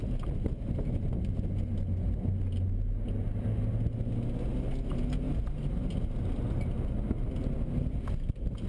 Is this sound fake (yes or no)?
no